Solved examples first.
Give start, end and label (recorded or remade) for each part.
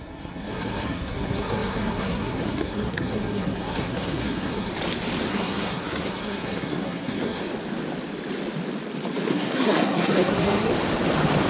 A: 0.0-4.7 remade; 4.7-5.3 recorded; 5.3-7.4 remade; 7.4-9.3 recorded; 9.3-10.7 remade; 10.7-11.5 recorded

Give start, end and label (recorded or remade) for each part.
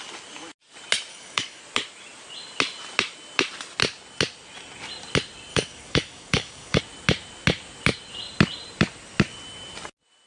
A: 0.0-1.1 recorded; 1.1-1.6 remade; 1.6-5.5 recorded; 5.5-6.8 remade; 6.8-10.3 recorded